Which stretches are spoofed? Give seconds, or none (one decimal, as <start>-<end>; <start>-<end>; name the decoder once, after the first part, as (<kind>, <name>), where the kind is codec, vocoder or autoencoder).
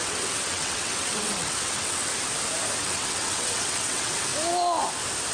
0.0-2.1 (vocoder, WaveNeXt); 2.8-4.3